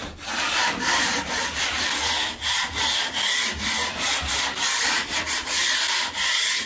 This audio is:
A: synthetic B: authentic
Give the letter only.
B